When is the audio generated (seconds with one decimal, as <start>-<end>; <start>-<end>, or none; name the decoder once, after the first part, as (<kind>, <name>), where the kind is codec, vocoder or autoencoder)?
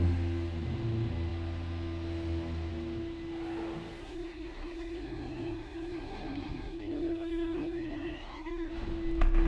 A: 4.0-8.7 (codec, SNAC)